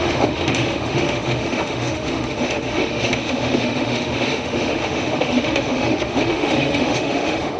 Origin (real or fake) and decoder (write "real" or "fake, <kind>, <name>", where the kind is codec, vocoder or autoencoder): fake, autoencoder, DAC-VAE